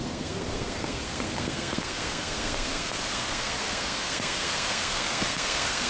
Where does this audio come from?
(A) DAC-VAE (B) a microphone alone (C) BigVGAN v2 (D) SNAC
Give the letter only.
D